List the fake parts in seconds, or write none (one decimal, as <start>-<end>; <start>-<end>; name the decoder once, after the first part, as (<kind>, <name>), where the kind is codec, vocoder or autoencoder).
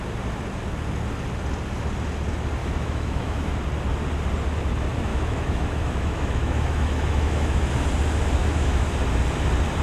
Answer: 2.6-3.5 (autoencoder, DAC-VAE); 5.1-7.7; 8.4-8.9